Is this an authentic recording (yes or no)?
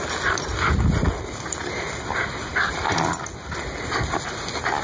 yes